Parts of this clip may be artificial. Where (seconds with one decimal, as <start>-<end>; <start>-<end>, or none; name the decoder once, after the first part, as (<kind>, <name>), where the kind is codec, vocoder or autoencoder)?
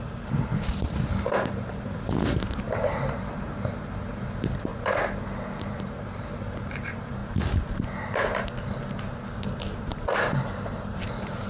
0.0-4.7 (vocoder, BigVGAN v2); 5.6-7.2; 9.8-11.5